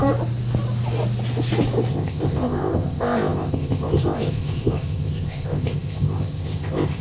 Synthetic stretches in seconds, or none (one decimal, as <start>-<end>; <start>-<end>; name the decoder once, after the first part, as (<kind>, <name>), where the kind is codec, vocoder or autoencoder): 1.9-7.0 (codec, ZipCodec)